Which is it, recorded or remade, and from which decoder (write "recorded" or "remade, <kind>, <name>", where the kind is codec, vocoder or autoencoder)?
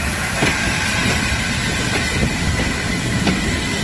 recorded